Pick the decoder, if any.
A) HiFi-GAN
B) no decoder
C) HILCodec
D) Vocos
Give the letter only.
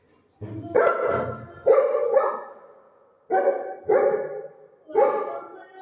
B